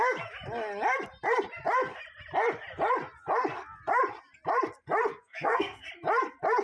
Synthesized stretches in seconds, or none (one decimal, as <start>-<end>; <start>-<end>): 5.1-5.9